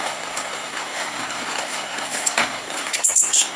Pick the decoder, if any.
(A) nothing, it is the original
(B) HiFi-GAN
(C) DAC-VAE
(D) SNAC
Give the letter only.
D